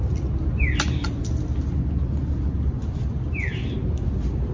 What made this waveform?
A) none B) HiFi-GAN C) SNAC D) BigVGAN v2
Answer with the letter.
A